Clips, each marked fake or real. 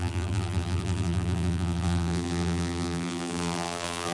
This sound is fake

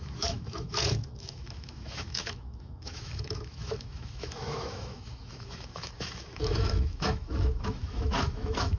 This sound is fake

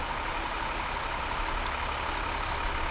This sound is real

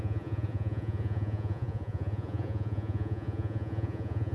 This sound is fake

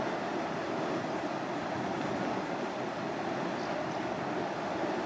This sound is real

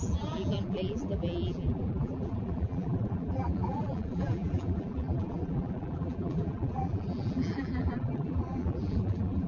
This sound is fake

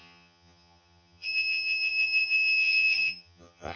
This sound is fake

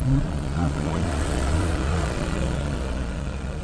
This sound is fake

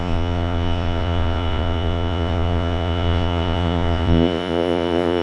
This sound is fake